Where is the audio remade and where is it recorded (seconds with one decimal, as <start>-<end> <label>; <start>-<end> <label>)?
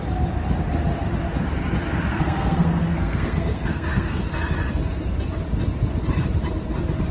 0.0-2.1 recorded; 2.1-4.2 remade; 4.2-7.1 recorded